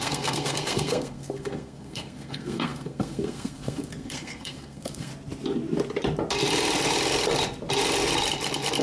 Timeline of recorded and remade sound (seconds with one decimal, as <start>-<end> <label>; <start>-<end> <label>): 0.0-5.1 remade; 5.1-8.8 recorded